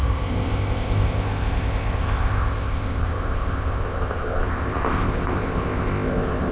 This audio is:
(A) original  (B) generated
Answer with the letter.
B